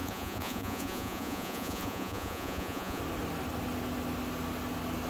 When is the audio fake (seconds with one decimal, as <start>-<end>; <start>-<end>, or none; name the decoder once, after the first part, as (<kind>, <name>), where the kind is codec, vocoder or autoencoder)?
0.0-3.0 (vocoder, Vocos)

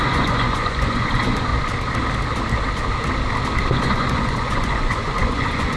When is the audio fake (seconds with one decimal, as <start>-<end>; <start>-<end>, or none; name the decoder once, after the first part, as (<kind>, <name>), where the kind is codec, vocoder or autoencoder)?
0.0-1.5 (vocoder, Vocos); 3.6-5.8